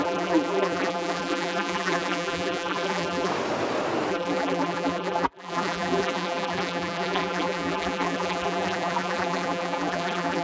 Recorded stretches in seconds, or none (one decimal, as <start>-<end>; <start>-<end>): 3.3-4.1